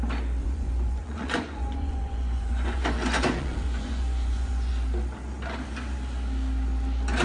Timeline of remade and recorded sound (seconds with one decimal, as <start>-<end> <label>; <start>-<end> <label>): 0.0-0.4 recorded; 0.4-4.7 remade; 4.7-7.2 recorded

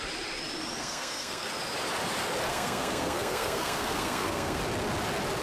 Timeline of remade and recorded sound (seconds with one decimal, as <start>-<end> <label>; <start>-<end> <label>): 0.0-0.8 recorded; 0.8-1.5 remade; 1.5-2.5 recorded; 2.5-4.6 remade; 4.6-5.4 recorded

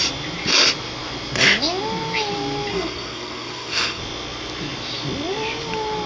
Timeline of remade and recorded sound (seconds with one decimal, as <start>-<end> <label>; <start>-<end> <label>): 0.0-2.7 recorded; 2.7-4.0 remade; 4.0-6.1 recorded

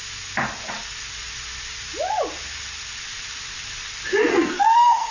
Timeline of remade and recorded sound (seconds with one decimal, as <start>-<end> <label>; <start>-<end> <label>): 0.0-4.3 recorded; 4.3-5.1 remade

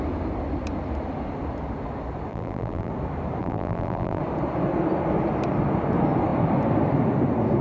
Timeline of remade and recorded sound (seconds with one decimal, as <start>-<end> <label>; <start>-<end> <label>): 0.0-2.3 recorded; 2.3-2.9 remade; 2.9-3.4 recorded; 3.4-4.2 remade; 4.2-7.6 recorded

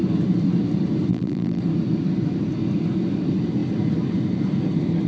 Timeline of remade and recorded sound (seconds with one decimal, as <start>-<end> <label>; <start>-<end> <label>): 0.0-1.1 recorded; 1.1-1.6 remade; 1.6-5.1 recorded